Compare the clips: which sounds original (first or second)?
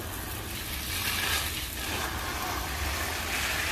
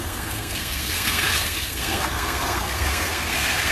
first